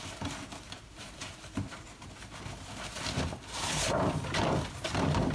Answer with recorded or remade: recorded